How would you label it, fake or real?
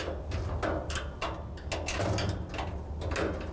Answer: real